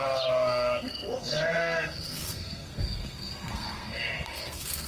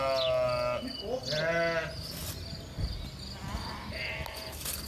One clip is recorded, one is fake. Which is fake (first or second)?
first